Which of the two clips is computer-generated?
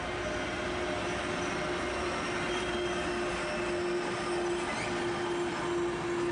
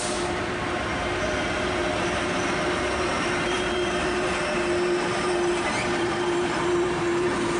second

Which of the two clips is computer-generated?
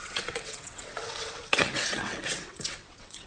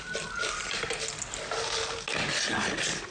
first